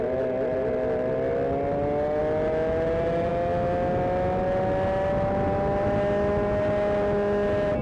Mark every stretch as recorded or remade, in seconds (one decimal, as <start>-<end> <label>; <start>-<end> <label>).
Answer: 0.0-7.8 recorded